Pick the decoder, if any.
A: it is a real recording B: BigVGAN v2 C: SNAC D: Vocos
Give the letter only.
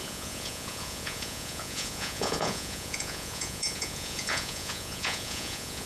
D